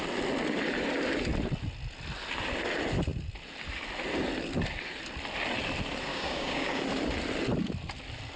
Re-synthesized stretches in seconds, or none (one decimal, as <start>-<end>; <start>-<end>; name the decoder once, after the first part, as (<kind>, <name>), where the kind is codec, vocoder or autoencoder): 6.1-6.8 (codec, DAC)